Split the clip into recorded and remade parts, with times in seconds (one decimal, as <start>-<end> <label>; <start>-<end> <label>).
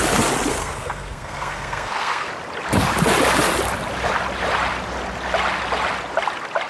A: 0.0-0.5 recorded; 0.5-2.3 remade; 2.3-6.7 recorded